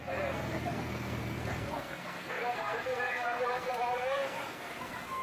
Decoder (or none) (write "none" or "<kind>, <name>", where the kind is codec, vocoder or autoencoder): codec, SNAC